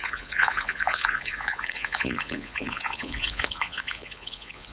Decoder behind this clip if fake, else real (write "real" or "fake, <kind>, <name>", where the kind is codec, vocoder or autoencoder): fake, vocoder, Vocos